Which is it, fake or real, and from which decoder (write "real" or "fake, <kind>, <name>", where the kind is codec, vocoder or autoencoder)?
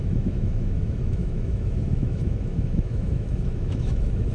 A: fake, autoencoder, DAC-VAE